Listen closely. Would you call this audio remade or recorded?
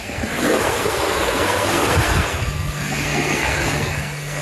remade